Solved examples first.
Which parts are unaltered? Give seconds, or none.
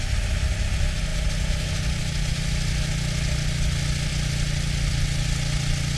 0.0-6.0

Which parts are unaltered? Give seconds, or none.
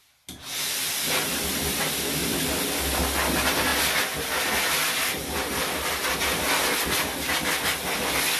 0.0-8.4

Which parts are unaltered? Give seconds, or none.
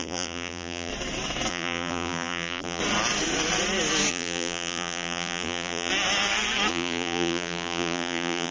0.9-1.5; 2.8-4.1; 5.9-6.7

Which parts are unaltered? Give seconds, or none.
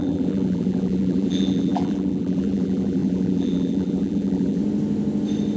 4.6-5.6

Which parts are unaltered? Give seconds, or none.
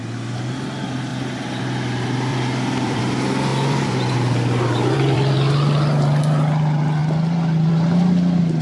0.0-2.3; 3.0-3.5; 5.3-8.6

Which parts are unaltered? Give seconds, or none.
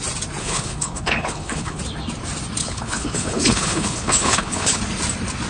0.0-0.4; 1.8-2.6; 4.8-5.5